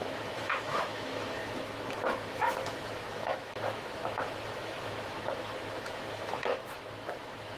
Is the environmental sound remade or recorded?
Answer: remade